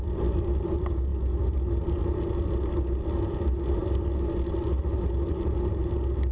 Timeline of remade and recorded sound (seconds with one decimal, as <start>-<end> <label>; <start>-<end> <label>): 0.0-6.3 recorded